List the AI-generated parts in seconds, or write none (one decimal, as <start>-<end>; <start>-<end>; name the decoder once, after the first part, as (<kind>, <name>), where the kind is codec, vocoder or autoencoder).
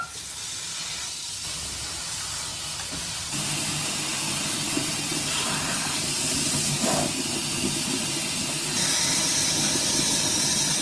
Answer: none